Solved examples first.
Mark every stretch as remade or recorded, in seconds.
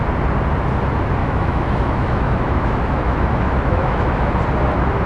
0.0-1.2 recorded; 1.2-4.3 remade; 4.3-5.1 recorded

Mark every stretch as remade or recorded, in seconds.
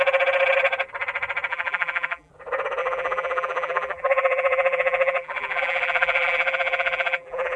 0.0-1.5 recorded; 1.5-2.3 remade; 2.3-2.8 recorded; 2.8-7.6 remade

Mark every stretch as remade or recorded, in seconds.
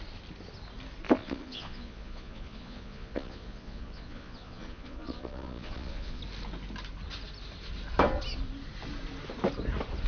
0.0-1.2 recorded; 1.2-6.2 remade; 6.2-10.1 recorded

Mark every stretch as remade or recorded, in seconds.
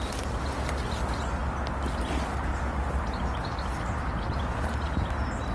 0.0-5.5 recorded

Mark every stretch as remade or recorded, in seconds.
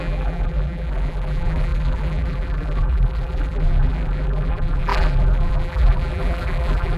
0.0-7.0 remade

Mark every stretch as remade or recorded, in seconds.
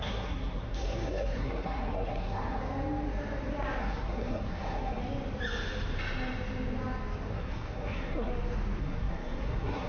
0.0-2.6 remade; 2.6-3.8 recorded; 3.8-5.0 remade; 5.0-7.3 recorded; 7.3-8.3 remade; 8.3-8.8 recorded; 8.8-9.9 remade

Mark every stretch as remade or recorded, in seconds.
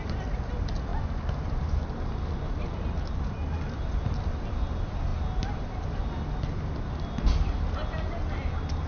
0.0-8.9 recorded